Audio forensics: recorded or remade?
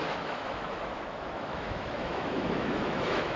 remade